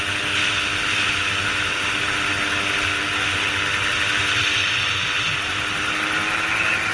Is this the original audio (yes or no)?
yes